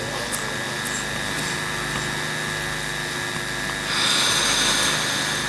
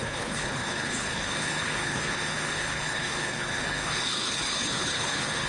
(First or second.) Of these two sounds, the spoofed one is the second